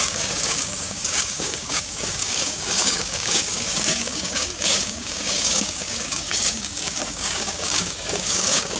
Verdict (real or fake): fake